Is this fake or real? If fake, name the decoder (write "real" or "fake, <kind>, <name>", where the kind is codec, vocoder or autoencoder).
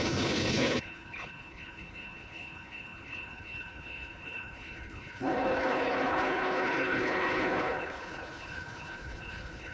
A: fake, codec, HILCodec